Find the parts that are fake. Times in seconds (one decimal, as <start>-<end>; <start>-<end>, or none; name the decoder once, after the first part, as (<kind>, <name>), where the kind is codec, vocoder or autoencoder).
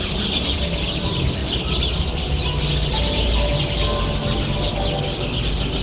none